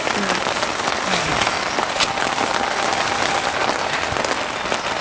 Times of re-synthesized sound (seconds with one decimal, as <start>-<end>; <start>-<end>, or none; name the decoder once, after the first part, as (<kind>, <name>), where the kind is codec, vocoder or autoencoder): none